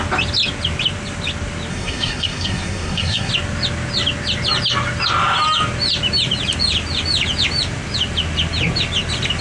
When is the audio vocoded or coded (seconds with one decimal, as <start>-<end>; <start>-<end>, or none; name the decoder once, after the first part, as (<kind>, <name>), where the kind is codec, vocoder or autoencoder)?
1.7-3.3 (codec, SNAC)

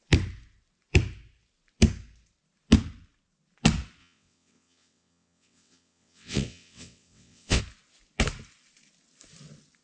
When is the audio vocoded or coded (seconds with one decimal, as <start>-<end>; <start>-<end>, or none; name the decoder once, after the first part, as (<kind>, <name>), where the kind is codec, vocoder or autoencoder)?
4.0-7.6 (vocoder, WaveNeXt)

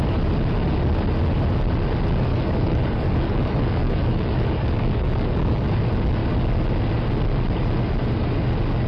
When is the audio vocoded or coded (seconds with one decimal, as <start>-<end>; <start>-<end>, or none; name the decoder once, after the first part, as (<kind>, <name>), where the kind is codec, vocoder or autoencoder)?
2.3-5.8 (codec, DAC)

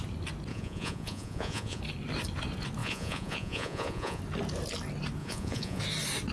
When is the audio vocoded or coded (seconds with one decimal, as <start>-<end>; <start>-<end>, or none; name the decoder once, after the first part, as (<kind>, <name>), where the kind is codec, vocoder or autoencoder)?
0.5-1.8 (vocoder, Vocos); 2.8-4.2; 5.2-5.8

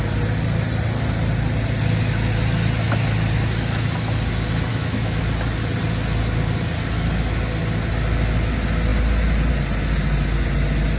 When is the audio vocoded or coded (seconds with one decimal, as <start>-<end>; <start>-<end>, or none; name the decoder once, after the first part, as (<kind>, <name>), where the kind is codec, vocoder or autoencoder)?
4.7-5.2 (autoencoder, DAC-VAE)

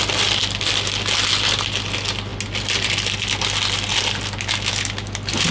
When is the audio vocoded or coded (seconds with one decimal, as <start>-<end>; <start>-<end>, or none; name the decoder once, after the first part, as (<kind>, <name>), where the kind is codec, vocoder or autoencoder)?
none

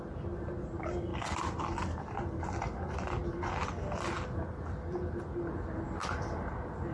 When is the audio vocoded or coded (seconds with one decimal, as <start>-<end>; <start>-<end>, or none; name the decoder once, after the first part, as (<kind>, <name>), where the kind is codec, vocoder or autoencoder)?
none